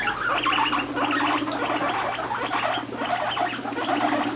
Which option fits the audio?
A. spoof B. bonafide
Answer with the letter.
B